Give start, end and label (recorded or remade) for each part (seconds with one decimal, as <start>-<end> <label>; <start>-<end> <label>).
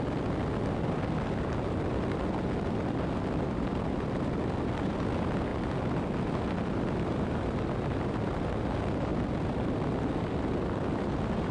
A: 0.0-11.5 recorded